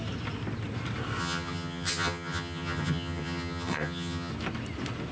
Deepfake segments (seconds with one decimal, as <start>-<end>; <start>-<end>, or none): 1.2-4.3